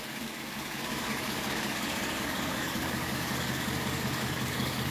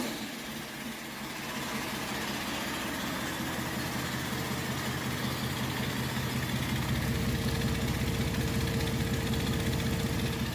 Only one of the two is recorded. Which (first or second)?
second